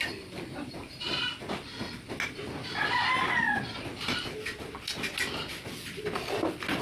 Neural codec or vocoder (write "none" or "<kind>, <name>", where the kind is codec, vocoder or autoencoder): none